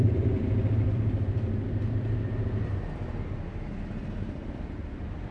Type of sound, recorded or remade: remade